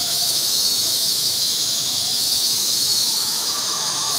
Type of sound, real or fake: fake